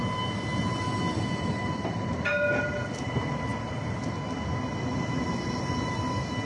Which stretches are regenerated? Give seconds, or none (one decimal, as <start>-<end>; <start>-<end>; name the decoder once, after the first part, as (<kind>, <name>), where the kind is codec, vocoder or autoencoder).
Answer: none